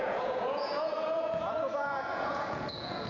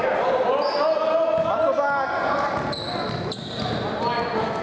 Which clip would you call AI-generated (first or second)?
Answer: first